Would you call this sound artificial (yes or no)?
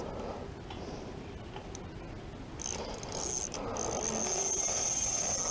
no